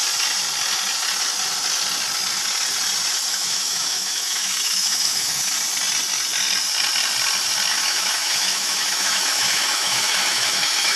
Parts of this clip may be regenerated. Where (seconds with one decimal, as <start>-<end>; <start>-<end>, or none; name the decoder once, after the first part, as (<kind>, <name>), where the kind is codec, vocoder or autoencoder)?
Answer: 3.3-5.5 (autoencoder, DAC-VAE); 7.7-11.0